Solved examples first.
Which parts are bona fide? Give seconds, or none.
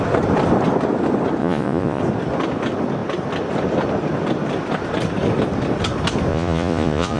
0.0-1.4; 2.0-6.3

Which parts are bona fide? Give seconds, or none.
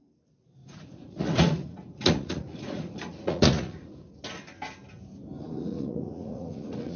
0.0-0.6; 4.1-5.4